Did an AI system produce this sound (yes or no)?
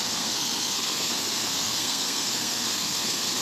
yes